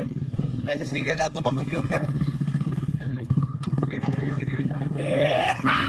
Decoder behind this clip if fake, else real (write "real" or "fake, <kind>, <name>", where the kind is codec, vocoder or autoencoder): fake, codec, SNAC